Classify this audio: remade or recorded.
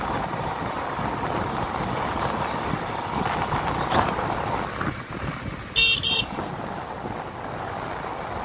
recorded